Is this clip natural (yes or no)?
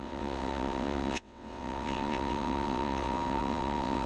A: no